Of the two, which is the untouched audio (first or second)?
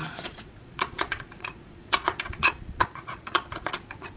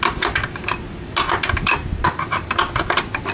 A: second